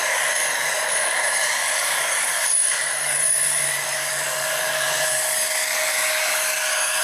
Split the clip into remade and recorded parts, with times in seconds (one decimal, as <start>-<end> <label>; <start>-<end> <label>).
0.0-7.0 remade